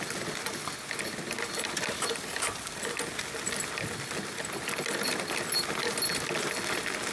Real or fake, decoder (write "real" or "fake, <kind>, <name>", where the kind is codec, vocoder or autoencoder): real